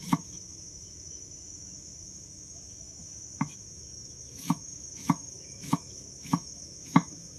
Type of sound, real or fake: fake